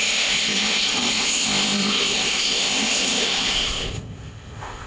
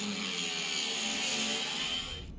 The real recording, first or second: second